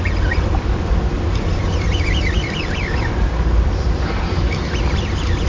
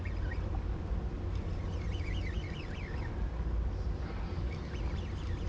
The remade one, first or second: first